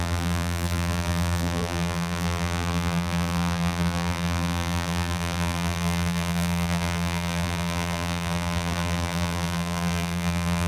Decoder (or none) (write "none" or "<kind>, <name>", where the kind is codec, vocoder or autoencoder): vocoder, BigVGAN v2